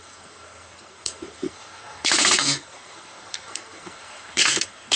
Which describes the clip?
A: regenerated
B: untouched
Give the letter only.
A